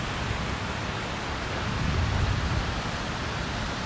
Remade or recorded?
remade